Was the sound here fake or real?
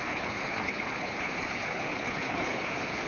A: fake